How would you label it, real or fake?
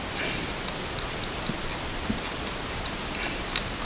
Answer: real